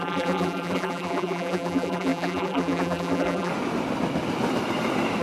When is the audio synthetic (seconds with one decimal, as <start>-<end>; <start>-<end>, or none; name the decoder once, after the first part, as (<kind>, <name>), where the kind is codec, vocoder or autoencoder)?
0.0-3.5 (vocoder, BigVGAN v2)